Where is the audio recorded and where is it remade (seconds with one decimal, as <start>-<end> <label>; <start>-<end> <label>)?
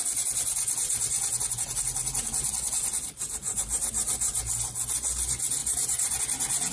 0.0-2.9 recorded; 2.9-4.4 remade; 4.4-5.6 recorded; 5.6-6.2 remade; 6.2-6.7 recorded